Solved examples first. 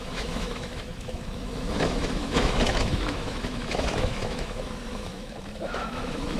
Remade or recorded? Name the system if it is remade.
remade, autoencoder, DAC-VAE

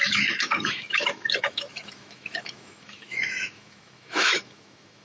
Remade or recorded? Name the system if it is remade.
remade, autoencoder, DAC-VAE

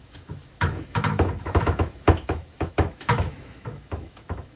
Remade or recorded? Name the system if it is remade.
remade, autoencoder, DAC-VAE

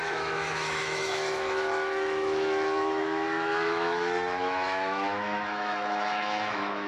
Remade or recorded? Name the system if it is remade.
remade, autoencoder, DAC-VAE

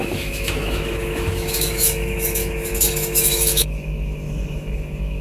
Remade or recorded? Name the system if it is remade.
remade, autoencoder, DAC-VAE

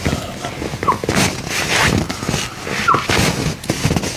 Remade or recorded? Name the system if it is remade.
recorded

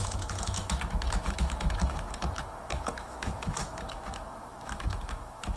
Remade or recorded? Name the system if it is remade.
remade, autoencoder, DAC-VAE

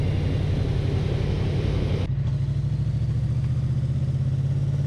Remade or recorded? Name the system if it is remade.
recorded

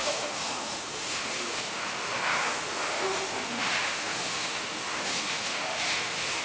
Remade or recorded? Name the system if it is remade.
remade, autoencoder, DAC-VAE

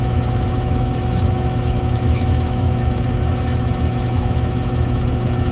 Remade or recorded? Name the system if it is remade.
remade, autoencoder, DAC-VAE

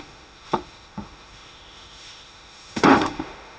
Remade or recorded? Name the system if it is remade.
remade, autoencoder, DAC-VAE